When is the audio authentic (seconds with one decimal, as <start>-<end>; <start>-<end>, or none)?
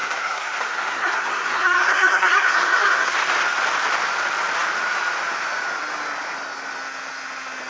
3.1-7.7